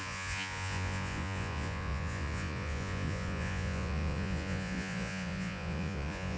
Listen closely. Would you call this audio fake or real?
fake